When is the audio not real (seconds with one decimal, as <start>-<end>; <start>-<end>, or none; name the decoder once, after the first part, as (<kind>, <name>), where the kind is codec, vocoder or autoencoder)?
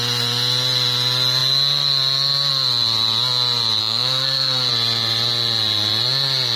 3.8-4.7 (codec, SNAC)